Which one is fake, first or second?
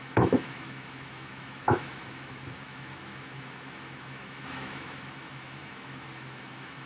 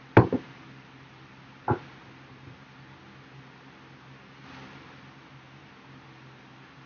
first